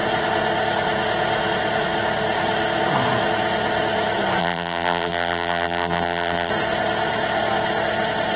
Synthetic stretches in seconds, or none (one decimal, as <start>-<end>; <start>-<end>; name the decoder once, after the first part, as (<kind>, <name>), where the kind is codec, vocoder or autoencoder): 4.4-6.5 (vocoder, BigVGAN v2)